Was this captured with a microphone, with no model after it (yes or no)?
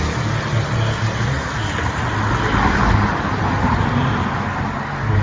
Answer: yes